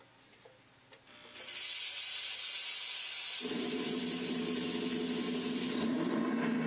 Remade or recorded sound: recorded